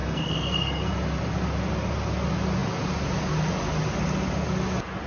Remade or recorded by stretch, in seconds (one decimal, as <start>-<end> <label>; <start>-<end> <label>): 0.0-0.9 remade; 0.9-5.1 recorded